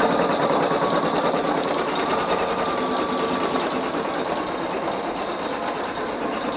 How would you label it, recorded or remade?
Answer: recorded